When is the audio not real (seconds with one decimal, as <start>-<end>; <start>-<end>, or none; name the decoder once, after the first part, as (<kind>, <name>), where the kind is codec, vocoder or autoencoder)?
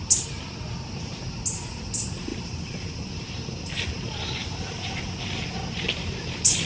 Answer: 2.3-3.1 (vocoder, BigVGAN v2); 4.4-5.0